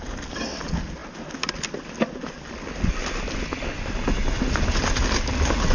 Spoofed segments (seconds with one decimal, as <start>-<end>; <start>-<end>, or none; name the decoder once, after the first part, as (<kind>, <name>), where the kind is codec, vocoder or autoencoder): none